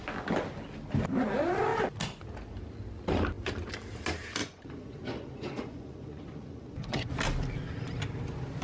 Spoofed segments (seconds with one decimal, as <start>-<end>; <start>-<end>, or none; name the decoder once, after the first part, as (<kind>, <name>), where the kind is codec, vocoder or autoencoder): 4.4-7.1 (vocoder, Vocos)